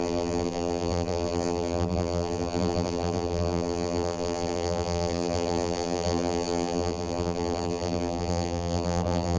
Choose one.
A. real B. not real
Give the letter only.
B